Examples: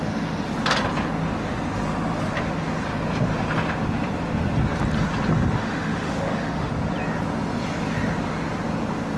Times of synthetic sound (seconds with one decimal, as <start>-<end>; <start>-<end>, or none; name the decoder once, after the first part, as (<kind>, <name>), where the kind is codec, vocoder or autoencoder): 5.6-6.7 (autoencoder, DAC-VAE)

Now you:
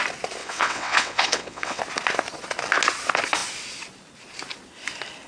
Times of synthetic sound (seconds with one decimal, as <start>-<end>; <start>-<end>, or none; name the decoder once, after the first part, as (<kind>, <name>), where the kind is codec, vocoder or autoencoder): 0.4-1.8 (vocoder, WaveNeXt)

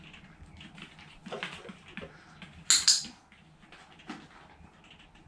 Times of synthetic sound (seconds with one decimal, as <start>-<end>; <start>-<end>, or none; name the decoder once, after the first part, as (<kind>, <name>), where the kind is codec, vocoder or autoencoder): none

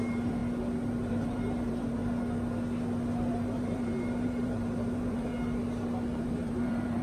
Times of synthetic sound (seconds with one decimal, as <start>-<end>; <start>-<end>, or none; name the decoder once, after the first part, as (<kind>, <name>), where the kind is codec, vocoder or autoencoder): 0.0-0.4 (vocoder, BigVGAN v2); 1.1-2.0; 3.3-5.3; 6.2-7.0

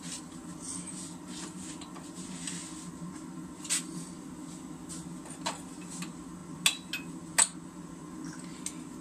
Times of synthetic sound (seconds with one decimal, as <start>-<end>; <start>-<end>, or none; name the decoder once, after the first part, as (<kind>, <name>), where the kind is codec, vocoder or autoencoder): none

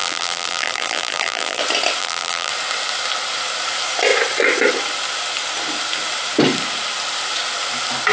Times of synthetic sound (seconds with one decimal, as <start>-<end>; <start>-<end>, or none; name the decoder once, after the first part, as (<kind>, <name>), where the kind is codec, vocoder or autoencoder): 0.0-1.6 (vocoder, BigVGAN v2); 2.0-2.5

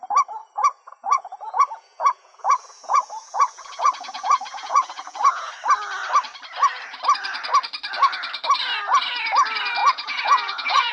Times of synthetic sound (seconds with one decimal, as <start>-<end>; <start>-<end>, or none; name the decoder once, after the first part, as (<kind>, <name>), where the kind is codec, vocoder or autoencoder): 0.4-5.5 (vocoder, Vocos); 9.8-10.9

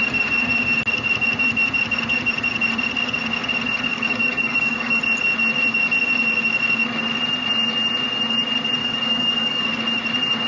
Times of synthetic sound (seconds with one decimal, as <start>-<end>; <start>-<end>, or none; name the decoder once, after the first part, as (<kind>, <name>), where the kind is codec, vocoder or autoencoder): 3.9-5.0 (codec, DAC); 8.8-9.8